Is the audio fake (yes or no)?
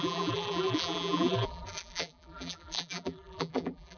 yes